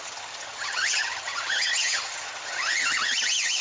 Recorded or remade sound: remade